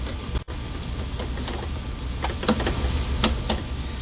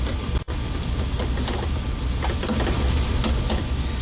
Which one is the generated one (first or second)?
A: second